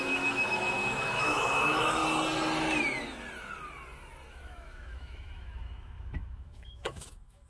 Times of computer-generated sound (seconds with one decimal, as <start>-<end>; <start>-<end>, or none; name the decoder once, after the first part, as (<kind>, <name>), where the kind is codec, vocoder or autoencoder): 0.0-2.0 (autoencoder, DAC-VAE); 4.3-7.5